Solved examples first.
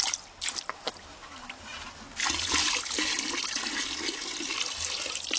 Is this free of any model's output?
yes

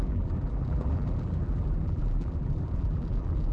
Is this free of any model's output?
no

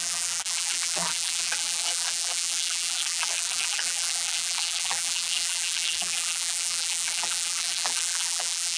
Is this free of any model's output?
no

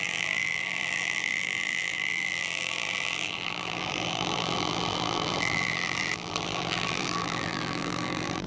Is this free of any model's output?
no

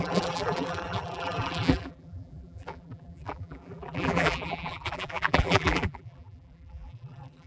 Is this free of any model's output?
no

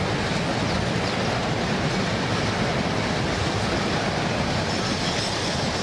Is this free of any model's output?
yes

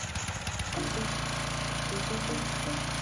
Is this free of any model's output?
yes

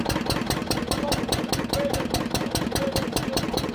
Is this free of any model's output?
yes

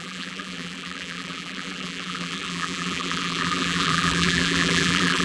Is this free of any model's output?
no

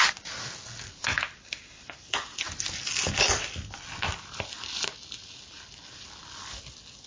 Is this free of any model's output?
yes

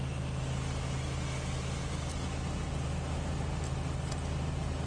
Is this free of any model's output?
yes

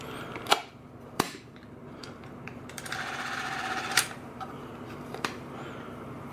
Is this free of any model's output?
no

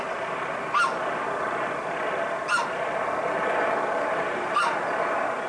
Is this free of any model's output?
yes